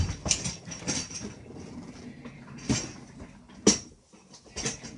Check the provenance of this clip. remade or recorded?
recorded